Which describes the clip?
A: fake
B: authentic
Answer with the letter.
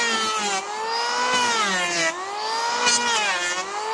B